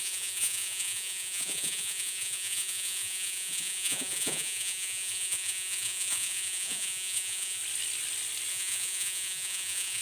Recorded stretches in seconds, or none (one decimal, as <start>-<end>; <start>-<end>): 7.6-8.5